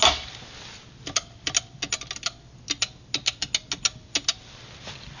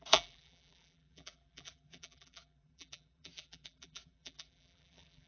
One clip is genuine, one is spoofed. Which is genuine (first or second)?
first